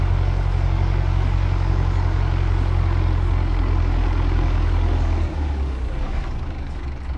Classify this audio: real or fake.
fake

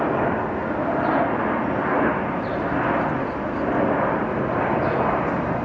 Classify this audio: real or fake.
real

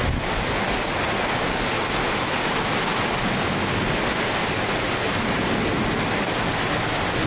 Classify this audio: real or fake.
real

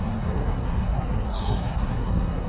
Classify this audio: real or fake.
fake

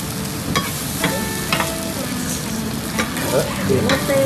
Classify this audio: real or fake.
real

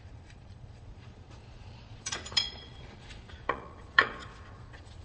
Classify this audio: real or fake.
fake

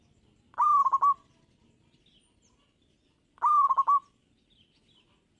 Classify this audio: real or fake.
real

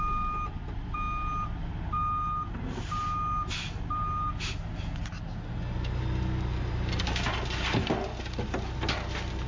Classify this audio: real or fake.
real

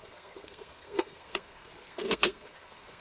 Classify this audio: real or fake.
fake